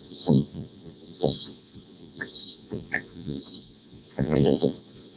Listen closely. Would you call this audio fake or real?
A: fake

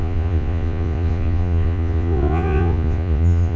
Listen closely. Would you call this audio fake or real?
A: fake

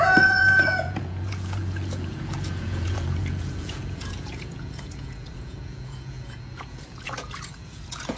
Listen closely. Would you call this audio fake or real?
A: fake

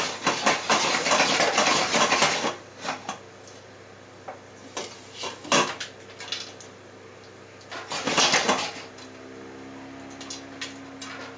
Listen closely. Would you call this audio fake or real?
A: real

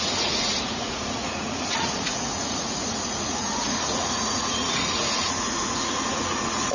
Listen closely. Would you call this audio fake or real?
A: fake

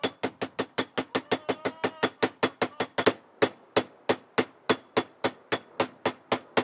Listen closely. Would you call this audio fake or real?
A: real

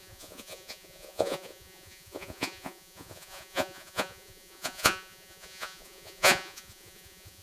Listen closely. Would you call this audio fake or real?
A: fake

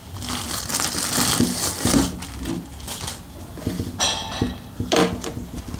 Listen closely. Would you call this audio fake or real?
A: real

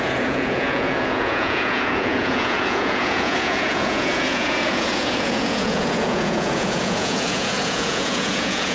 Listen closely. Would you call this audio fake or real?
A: fake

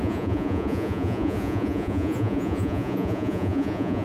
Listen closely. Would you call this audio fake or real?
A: fake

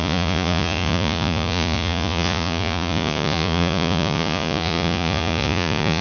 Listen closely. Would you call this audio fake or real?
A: fake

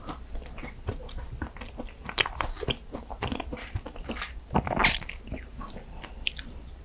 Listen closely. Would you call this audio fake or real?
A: real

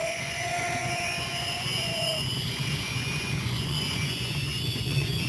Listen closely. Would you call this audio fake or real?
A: fake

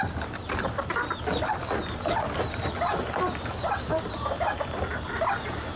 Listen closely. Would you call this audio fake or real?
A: real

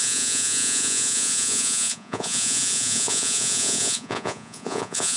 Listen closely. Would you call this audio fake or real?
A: fake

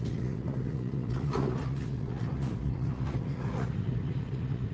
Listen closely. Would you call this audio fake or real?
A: fake